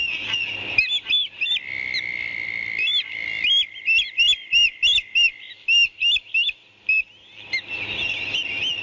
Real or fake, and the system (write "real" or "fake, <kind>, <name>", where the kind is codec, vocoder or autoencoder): real